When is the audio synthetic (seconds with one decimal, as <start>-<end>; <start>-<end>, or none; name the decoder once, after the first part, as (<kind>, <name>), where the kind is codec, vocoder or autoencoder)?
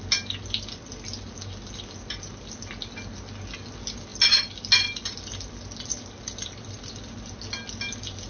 none